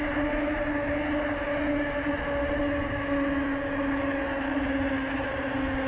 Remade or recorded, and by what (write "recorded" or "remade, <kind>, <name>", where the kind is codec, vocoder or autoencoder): recorded